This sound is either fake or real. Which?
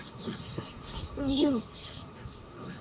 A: fake